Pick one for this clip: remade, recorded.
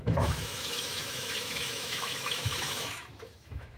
remade